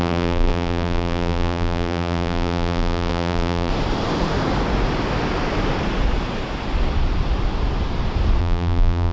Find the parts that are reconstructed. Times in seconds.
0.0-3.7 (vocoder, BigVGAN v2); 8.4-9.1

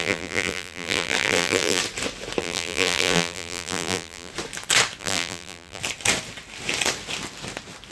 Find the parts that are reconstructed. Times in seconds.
0.0-1.8 (vocoder, BigVGAN v2); 2.4-4.3; 5.0-5.8

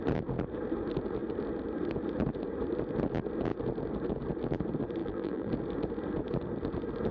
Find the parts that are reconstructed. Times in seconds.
5.0-5.5 (vocoder, BigVGAN v2)

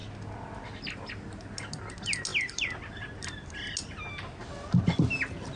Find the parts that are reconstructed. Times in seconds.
none

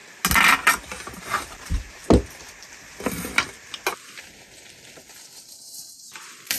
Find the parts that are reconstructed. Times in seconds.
1.2-2.0 (vocoder, BigVGAN v2); 6.0-6.6

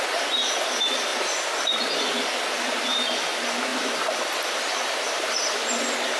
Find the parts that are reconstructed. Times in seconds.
3.7-5.3 (vocoder, BigVGAN v2)

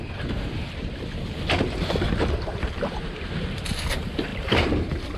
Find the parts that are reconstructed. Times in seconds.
0.0-0.8 (vocoder, BigVGAN v2); 1.6-5.2